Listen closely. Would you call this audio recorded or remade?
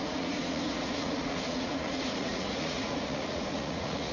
remade